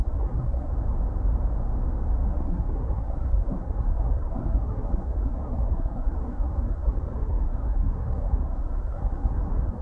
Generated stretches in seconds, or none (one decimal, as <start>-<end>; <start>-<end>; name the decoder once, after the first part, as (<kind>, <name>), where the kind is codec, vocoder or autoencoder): 0.0-0.7 (codec, SNAC); 2.3-9.8

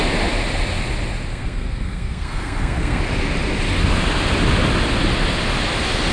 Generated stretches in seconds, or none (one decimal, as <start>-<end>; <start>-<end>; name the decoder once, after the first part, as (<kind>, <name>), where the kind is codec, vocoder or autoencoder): 1.3-3.0 (codec, SNAC)

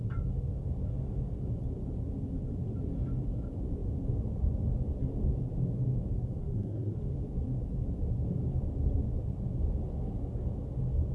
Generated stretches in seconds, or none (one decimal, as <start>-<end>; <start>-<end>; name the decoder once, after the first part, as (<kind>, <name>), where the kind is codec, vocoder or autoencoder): 6.4-7.0 (codec, SNAC)

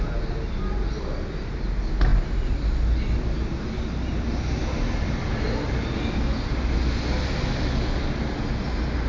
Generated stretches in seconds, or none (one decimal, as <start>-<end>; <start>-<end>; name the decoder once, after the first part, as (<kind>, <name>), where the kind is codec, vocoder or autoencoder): none

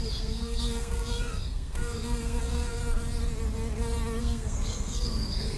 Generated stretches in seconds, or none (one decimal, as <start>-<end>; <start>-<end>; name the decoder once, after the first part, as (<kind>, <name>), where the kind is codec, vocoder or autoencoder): 0.0-2.8 (codec, SNAC); 4.2-5.6

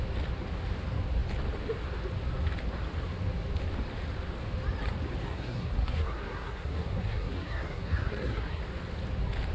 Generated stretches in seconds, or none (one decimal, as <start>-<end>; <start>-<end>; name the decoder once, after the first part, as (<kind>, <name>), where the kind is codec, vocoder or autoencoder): 5.2-8.6 (codec, SNAC)

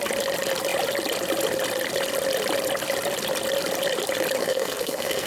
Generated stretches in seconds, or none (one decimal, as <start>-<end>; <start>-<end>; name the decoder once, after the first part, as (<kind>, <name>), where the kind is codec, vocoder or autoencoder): 4.4-5.3 (codec, SNAC)

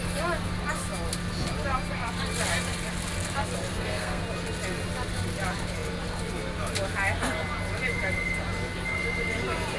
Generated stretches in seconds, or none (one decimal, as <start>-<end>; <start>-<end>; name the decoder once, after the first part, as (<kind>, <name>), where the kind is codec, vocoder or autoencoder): 3.7-4.2 (codec, SNAC)